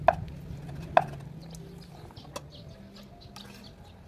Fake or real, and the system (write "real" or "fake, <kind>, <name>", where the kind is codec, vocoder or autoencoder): real